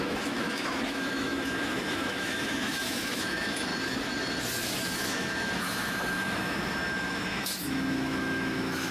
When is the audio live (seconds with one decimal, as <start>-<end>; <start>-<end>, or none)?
3.7-4.6